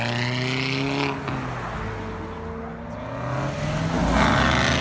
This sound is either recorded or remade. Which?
recorded